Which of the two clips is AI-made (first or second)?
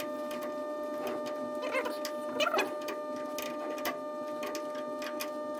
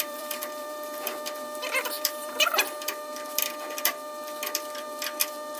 second